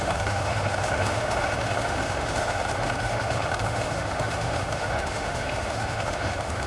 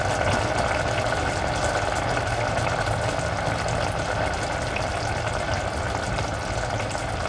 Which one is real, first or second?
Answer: second